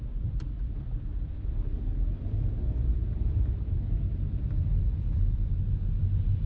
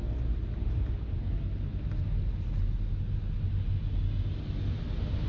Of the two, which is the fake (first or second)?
first